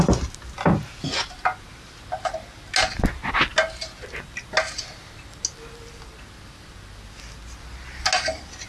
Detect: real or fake real